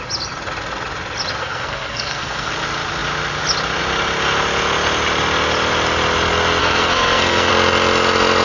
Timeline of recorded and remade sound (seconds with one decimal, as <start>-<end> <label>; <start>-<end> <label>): 0.0-1.4 recorded; 1.4-2.5 remade; 2.5-6.6 recorded; 6.6-7.5 remade; 7.5-8.4 recorded